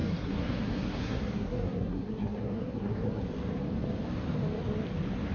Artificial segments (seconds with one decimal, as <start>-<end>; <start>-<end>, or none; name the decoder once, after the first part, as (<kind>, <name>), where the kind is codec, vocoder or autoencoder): 0.0-3.2 (codec, SNAC)